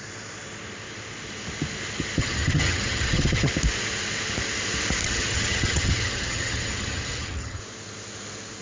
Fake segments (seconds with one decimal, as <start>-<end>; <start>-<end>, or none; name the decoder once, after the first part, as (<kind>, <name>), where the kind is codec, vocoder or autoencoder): 2.2-3.5 (vocoder, HiFi-GAN); 5.0-7.6